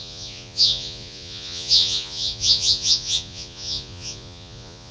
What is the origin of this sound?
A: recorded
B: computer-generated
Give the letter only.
B